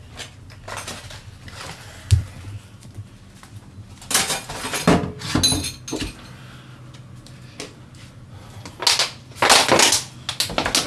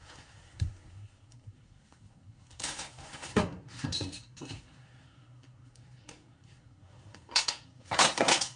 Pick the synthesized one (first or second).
second